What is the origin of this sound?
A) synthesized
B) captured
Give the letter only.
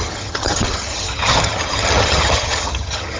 A